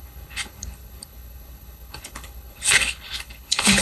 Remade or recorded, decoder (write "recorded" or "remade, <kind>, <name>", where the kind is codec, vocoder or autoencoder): remade, codec, HILCodec